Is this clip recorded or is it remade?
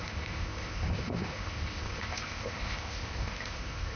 remade